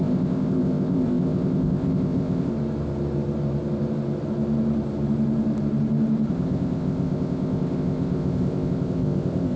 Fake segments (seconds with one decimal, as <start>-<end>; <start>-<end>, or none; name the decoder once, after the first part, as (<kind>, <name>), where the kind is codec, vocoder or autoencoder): 0.0-2.5 (codec, ZipCodec); 6.3-9.6